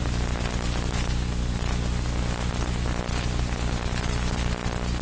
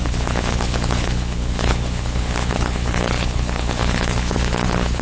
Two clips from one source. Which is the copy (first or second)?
second